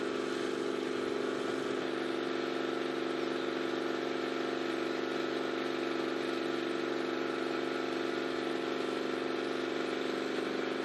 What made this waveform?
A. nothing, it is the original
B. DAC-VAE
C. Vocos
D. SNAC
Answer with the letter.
A